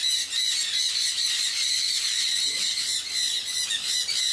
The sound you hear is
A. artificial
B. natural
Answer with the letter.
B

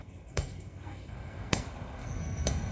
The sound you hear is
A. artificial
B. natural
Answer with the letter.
A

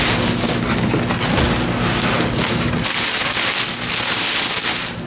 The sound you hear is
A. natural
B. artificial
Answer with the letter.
A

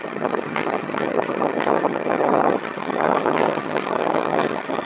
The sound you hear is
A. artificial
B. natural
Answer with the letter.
A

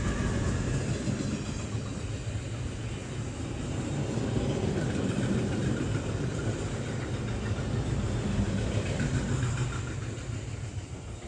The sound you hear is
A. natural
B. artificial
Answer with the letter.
A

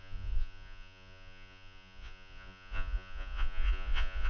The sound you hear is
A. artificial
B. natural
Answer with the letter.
A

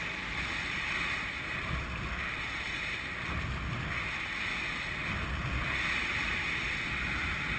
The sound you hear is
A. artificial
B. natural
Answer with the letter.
B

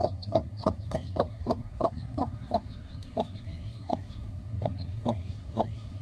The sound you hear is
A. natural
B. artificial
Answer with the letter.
B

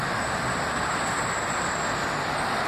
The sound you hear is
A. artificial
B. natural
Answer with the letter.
B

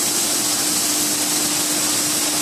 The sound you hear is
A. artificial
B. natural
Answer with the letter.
B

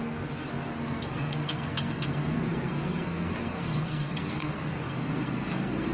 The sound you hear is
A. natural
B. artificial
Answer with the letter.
B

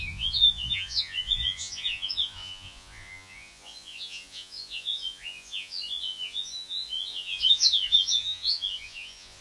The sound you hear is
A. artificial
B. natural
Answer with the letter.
A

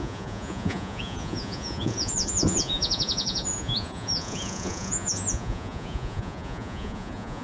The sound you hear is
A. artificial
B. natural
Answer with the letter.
A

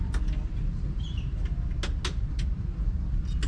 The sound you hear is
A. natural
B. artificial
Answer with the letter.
A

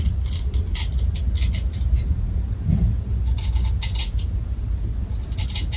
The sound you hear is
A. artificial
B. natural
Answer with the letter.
B